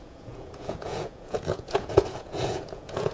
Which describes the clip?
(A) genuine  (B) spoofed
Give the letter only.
B